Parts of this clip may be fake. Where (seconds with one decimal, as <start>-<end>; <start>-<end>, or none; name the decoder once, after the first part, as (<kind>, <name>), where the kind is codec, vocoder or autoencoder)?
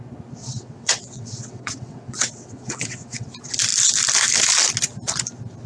0.4-3.3 (vocoder, WaveNeXt)